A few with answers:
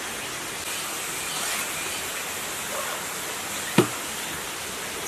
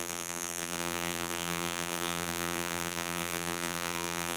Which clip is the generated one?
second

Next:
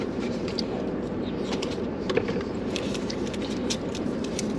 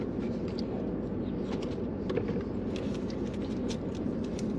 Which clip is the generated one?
first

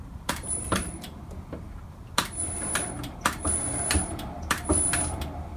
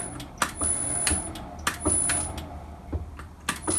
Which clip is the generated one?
first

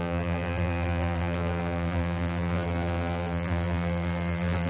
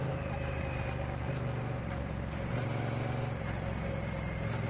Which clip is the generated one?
first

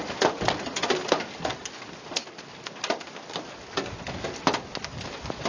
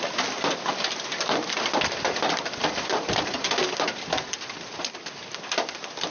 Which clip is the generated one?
second